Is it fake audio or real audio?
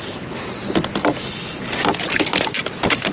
real